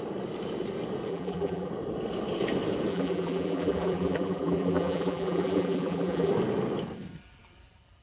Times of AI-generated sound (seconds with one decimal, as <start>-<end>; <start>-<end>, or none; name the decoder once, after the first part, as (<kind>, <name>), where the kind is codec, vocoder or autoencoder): 1.1-1.7 (vocoder, BigVGAN v2); 2.9-6.3